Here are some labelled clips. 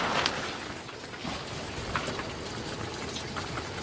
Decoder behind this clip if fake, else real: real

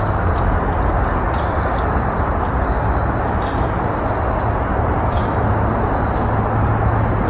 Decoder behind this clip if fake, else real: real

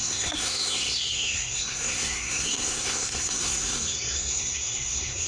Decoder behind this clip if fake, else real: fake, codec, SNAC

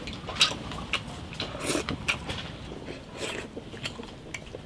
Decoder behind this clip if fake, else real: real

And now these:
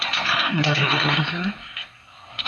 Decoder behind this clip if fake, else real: fake, codec, SNAC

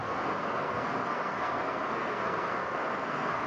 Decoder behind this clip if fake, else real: fake, codec, SNAC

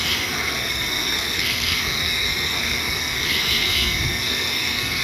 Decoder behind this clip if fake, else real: fake, codec, SNAC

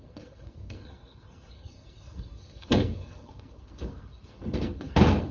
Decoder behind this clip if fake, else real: fake, codec, SNAC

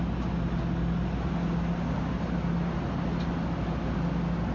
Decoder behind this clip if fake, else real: real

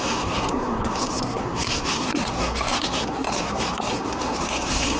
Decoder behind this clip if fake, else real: fake, codec, SNAC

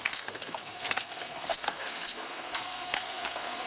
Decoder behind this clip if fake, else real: fake, codec, SNAC